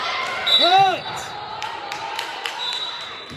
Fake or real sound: fake